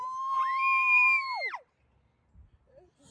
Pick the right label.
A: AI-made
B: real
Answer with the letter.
B